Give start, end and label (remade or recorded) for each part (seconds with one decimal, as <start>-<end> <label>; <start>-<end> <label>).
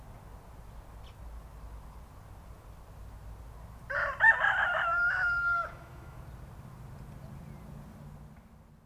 0.0-4.6 recorded; 4.6-6.2 remade; 6.2-8.9 recorded